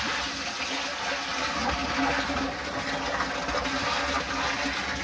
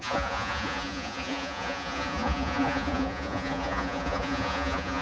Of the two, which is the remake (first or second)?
second